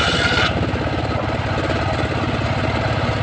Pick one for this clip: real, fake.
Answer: real